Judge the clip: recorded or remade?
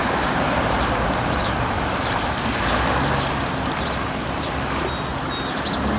recorded